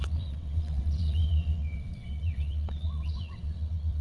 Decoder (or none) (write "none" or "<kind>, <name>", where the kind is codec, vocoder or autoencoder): vocoder, WaveNeXt